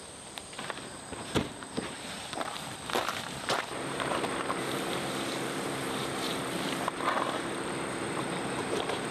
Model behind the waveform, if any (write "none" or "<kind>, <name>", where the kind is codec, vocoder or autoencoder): vocoder, BigVGAN v2